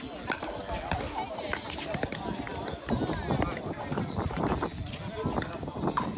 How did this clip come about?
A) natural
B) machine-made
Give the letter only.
A